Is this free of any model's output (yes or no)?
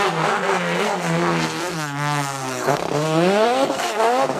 no